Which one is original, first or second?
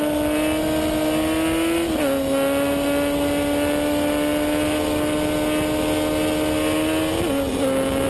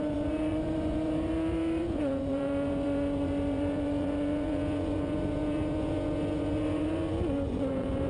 first